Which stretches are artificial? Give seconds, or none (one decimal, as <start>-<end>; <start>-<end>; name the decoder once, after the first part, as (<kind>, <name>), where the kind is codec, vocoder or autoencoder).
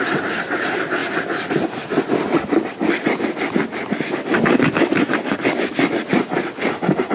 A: none